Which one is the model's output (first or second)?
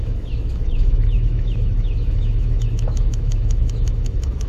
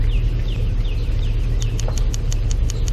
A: first